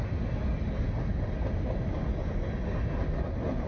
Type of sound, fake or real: real